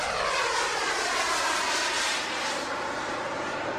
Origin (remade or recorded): remade